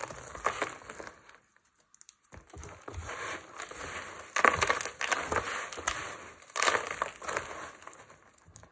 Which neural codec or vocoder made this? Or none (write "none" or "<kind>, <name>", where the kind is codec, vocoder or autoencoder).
none